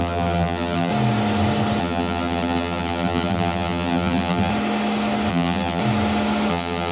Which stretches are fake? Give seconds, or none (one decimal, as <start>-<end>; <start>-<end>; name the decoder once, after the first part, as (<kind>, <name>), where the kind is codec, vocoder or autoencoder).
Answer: 0.0-0.9 (vocoder, BigVGAN v2); 1.8-4.5; 5.3-5.8; 6.5-6.9